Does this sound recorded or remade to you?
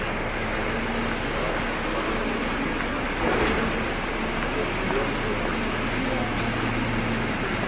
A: recorded